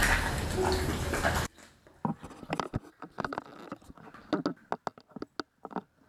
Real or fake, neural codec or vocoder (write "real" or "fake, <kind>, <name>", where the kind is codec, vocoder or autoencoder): real